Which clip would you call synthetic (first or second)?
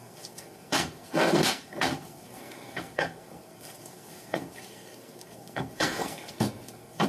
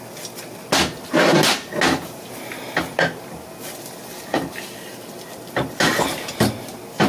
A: first